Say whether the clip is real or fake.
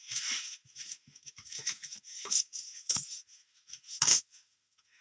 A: fake